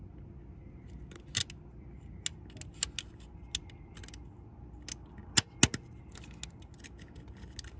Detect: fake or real real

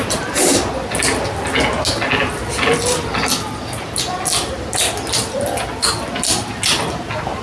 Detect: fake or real real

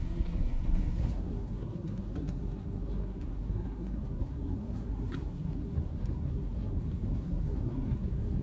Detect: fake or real fake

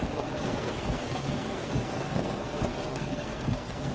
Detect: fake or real fake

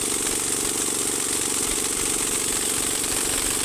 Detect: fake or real fake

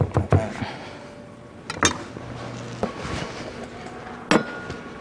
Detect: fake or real real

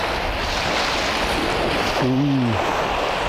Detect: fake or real real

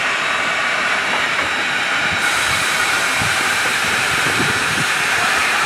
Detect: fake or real fake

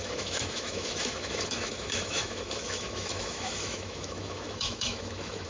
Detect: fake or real fake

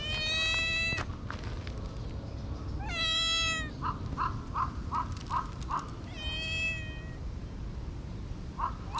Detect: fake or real real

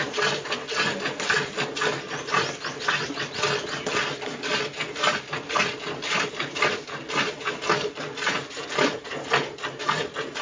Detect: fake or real real